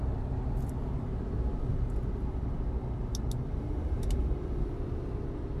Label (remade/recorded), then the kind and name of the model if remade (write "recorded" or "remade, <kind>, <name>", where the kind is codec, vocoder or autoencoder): recorded